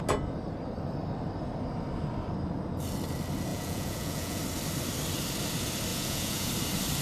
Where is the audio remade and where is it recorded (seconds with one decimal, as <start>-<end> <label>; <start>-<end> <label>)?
0.0-3.5 recorded; 3.5-4.4 remade; 4.4-5.9 recorded; 5.9-6.5 remade; 6.5-7.0 recorded